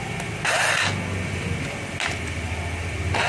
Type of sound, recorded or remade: recorded